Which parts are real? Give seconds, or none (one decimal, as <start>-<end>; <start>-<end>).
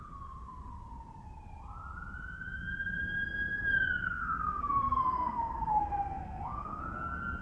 0.0-4.0; 6.8-7.4